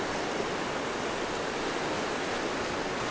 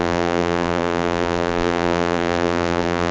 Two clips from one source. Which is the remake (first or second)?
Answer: second